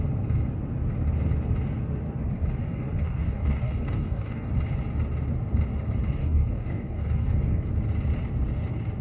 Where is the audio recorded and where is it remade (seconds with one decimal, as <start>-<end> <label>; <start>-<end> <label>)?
0.0-2.6 recorded; 2.6-4.5 remade; 4.5-6.2 recorded; 6.2-7.7 remade; 7.7-9.0 recorded